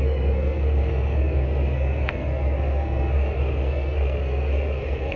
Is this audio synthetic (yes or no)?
yes